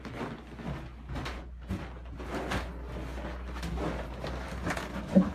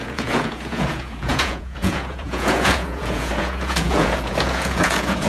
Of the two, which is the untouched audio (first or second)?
first